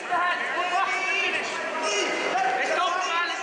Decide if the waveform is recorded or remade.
remade